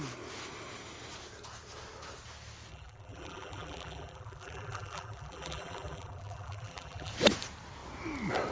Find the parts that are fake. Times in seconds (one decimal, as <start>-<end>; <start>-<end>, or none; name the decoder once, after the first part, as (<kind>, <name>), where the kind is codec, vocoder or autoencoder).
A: 2.7-7.1 (vocoder, BigVGAN v2)